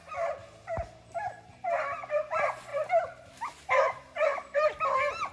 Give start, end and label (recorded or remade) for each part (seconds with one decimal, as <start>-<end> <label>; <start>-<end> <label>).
0.0-0.4 recorded; 0.4-1.7 remade; 1.7-2.7 recorded; 2.7-4.8 remade; 4.8-5.3 recorded